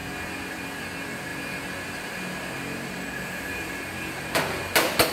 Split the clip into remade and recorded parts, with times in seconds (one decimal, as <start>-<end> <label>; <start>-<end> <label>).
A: 0.0-0.6 remade; 0.6-1.3 recorded; 1.3-4.4 remade; 4.4-5.1 recorded